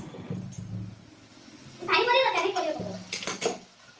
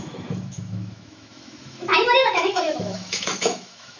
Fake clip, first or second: second